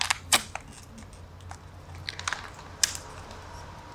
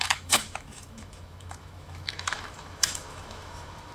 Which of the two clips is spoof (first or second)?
second